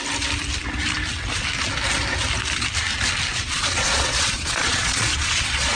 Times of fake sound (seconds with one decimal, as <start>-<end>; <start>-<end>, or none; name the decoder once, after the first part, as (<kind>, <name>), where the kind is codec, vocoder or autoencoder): 3.3-5.8 (vocoder, Vocos)